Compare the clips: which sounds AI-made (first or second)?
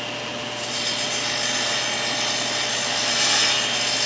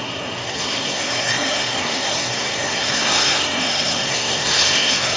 second